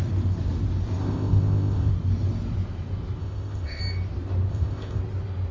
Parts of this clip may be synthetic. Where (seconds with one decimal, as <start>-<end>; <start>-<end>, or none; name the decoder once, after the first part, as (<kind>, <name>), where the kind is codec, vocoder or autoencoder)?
1.0-1.9 (codec, ZipCodec); 3.2-3.8; 4.5-5.0